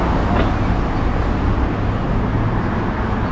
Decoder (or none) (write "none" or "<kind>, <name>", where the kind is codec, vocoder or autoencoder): none